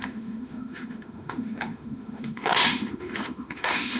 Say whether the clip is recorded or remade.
remade